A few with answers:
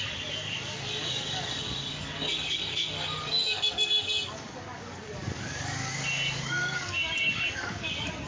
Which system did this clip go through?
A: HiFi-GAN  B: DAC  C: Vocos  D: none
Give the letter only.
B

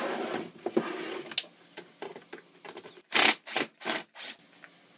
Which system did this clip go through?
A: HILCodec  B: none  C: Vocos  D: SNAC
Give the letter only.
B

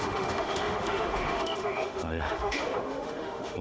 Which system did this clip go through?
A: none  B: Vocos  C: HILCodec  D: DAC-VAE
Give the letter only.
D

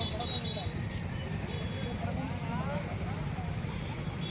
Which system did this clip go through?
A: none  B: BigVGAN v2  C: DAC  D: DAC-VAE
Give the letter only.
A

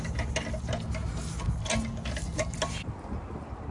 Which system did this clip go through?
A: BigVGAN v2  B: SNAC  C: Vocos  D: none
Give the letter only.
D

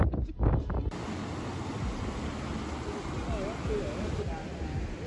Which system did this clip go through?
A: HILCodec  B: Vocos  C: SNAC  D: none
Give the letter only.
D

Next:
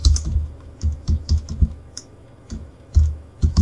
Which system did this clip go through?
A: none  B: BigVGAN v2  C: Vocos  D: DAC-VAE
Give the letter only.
D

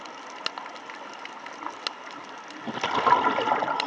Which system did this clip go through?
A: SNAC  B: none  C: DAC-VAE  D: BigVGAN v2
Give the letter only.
B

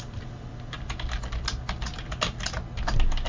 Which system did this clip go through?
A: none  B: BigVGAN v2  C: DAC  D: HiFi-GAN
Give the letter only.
A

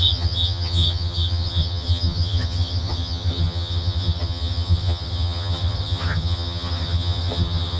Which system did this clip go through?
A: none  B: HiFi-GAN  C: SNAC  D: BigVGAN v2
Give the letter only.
B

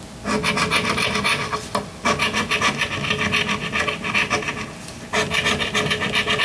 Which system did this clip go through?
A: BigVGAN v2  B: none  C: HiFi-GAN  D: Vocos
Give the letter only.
B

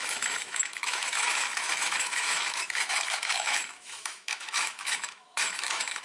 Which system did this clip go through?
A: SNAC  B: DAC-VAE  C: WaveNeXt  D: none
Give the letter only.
B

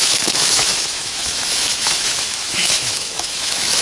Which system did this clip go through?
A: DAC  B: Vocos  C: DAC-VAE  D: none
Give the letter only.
C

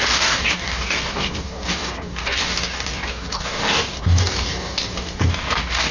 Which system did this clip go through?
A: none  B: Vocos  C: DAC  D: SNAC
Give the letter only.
C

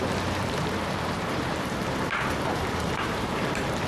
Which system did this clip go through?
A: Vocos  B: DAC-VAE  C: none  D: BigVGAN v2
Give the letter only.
D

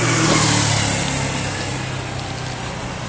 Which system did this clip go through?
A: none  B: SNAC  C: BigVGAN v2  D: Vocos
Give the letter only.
A